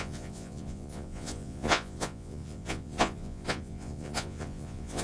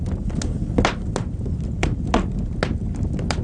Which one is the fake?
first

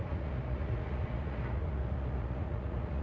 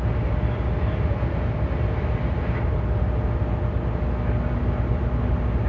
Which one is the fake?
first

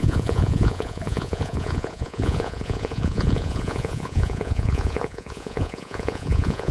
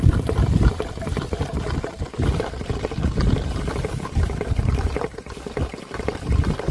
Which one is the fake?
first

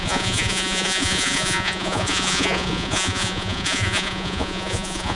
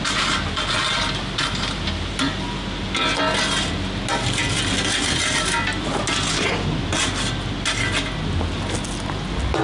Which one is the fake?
first